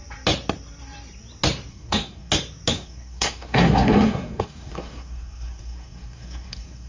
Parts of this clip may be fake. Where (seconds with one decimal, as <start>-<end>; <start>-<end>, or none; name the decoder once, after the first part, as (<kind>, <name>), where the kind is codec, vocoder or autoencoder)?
1.7-2.3 (codec, SNAC); 2.7-6.9